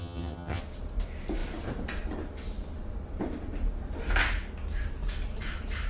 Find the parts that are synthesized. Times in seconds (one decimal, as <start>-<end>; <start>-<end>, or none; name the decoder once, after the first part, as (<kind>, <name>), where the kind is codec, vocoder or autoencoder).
0.0-0.6 (vocoder, HiFi-GAN)